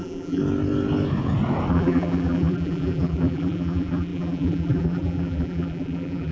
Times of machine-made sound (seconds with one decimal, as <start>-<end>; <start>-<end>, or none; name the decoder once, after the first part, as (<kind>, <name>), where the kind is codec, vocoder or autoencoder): 0.0-0.4 (vocoder, BigVGAN v2); 1.7-6.3